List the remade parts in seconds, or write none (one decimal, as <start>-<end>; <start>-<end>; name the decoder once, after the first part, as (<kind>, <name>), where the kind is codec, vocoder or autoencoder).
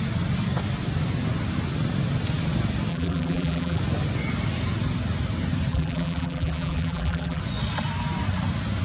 2.9-3.8 (vocoder, BigVGAN v2); 5.7-7.4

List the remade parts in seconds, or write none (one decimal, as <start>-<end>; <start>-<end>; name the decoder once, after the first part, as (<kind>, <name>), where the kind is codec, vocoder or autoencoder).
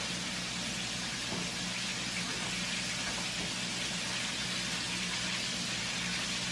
none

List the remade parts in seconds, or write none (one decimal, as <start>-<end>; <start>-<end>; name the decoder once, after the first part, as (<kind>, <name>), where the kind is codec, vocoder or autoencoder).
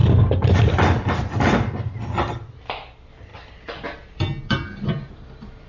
none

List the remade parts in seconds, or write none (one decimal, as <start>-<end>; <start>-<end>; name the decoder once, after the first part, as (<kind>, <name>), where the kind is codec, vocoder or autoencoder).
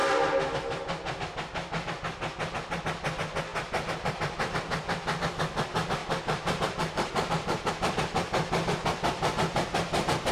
6.0-7.7 (vocoder, BigVGAN v2)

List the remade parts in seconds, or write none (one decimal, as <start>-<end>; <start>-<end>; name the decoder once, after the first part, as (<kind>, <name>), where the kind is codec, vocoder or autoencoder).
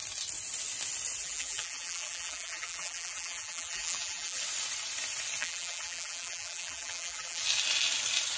1.2-4.4 (vocoder, BigVGAN v2); 5.4-7.4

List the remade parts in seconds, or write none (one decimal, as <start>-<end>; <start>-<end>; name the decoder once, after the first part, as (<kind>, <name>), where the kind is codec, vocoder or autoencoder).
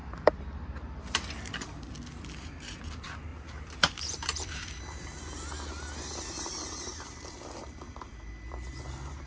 0.0-2.3 (vocoder, BigVGAN v2); 3.3-4.8; 6.9-8.7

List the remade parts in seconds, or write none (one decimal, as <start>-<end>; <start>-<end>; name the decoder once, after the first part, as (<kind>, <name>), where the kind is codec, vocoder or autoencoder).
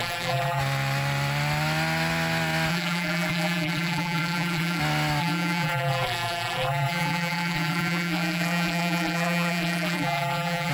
0.0-0.6 (vocoder, BigVGAN v2); 2.7-4.8; 5.2-10.7